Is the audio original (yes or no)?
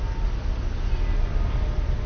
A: yes